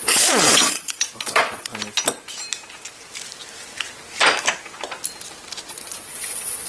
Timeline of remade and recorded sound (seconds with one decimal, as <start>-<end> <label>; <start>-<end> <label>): 0.0-1.7 remade; 1.7-5.7 recorded; 5.7-6.7 remade